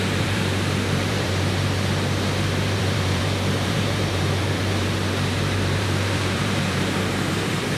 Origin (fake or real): fake